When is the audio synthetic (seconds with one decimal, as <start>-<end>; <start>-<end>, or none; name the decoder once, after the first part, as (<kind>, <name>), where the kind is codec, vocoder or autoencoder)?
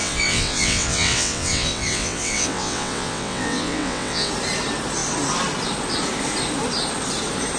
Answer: 0.0-4.3 (vocoder, WaveNeXt)